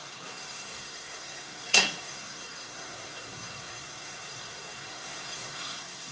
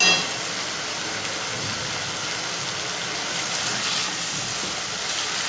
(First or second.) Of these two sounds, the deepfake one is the first